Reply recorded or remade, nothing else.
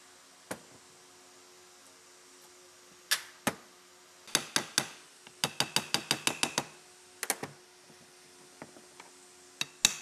recorded